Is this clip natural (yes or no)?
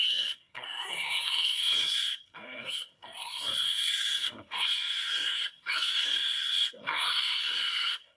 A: no